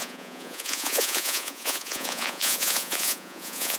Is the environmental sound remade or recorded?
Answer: remade